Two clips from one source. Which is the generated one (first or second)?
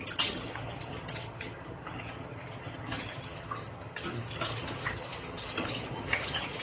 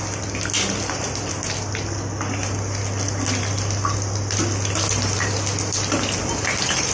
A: first